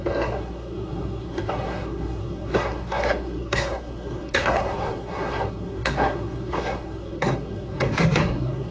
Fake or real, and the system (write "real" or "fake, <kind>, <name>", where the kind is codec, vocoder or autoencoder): fake, codec, SNAC